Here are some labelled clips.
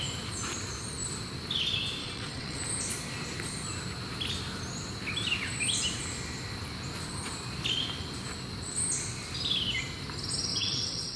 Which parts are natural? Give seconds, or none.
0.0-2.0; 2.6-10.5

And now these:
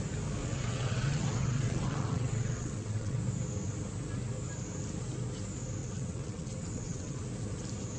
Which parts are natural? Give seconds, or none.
0.0-0.4; 3.2-5.8; 7.2-8.0

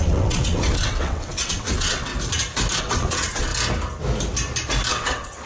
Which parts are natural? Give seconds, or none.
2.1-2.8; 3.5-4.9

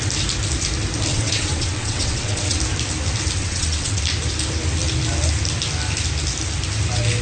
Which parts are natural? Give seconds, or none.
0.0-1.1; 2.6-3.4; 4.0-7.2

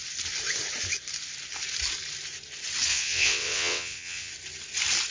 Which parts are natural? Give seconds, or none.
0.0-2.9; 4.3-5.1

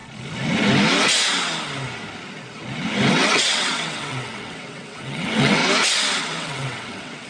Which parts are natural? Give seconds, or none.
0.0-3.1; 5.6-6.2

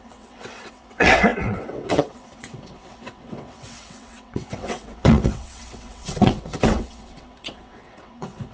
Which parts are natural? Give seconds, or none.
none

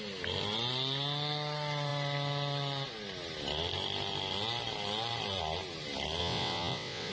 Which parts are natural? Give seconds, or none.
0.0-6.2